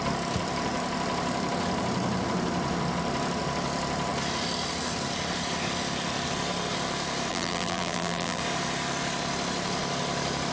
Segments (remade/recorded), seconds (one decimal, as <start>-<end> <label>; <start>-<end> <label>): 0.0-7.3 recorded; 7.3-8.4 remade; 8.4-10.5 recorded